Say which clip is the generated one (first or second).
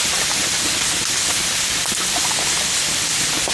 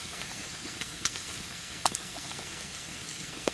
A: second